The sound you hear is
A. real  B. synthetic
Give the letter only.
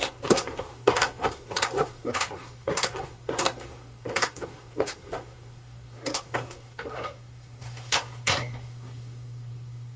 B